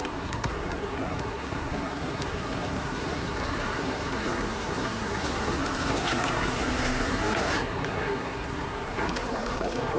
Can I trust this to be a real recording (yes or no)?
no